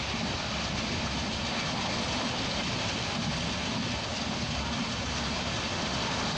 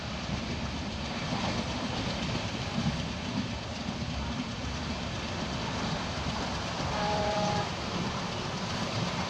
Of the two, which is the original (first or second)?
first